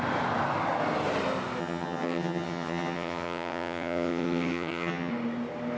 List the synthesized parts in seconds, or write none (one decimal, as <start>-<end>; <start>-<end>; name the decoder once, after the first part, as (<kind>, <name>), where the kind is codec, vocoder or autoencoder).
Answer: 1.6-5.1 (vocoder, HiFi-GAN)